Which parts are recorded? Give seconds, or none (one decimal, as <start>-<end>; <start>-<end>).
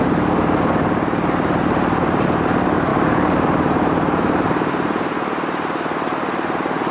0.0-2.9; 4.7-6.9